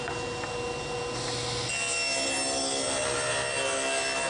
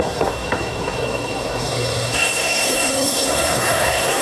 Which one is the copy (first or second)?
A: second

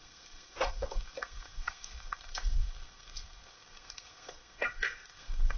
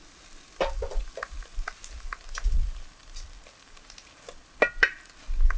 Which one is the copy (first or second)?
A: first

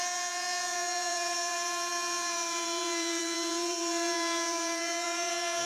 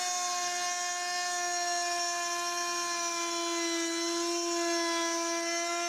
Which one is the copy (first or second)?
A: first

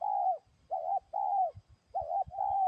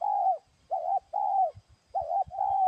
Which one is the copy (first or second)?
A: second